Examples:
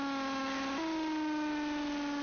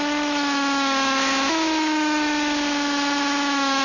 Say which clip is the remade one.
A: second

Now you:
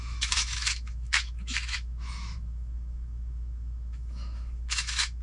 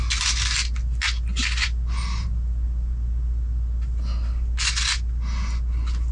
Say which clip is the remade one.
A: first